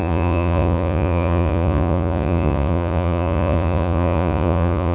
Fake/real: fake